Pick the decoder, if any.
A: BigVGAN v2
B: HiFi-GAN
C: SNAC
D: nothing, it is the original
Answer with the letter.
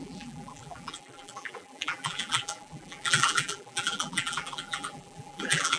A